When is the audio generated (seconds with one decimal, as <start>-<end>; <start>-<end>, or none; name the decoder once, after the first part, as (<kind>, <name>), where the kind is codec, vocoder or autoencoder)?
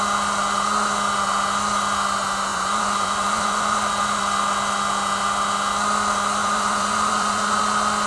2.5-4.2 (vocoder, Vocos); 6.4-7.6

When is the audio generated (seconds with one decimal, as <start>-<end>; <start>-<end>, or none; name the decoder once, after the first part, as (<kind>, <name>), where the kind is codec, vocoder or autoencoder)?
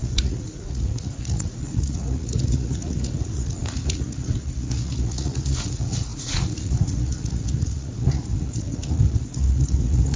0.0-10.2 (vocoder, Vocos)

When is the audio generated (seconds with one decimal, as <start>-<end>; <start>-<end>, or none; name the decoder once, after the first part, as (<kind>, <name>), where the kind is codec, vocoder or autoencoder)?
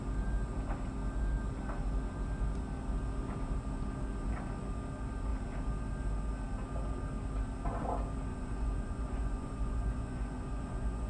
8.3-11.1 (vocoder, Vocos)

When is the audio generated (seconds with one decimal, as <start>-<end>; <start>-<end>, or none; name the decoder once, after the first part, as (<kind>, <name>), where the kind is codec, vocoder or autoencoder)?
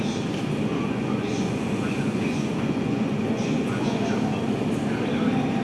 0.7-4.1 (vocoder, Vocos)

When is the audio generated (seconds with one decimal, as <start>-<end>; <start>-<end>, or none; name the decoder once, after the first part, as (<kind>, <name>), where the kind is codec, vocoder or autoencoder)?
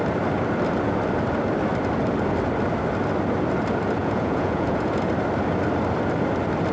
4.0-5.1 (vocoder, Vocos)